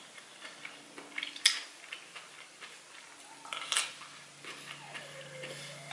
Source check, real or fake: real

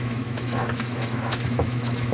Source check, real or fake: fake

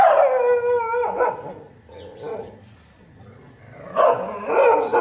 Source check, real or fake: real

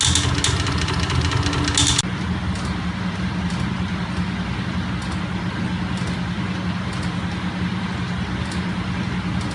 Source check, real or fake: real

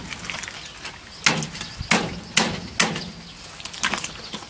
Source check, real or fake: real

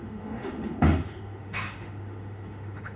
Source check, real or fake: fake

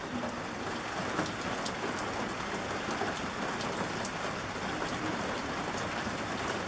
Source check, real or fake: real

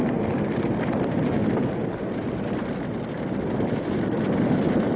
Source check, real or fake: real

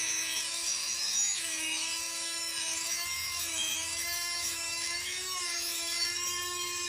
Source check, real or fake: fake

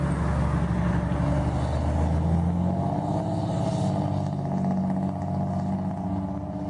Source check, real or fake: real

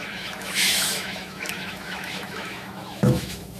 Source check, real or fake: fake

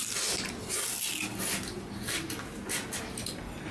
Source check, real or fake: real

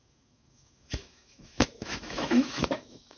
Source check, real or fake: fake